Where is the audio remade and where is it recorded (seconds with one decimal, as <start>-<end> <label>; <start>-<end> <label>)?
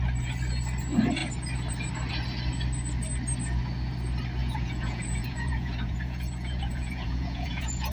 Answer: 0.0-4.4 recorded; 4.4-7.9 remade